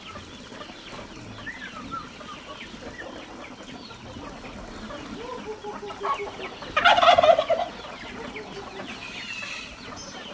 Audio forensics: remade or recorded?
recorded